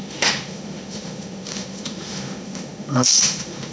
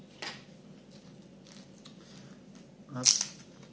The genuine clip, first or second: second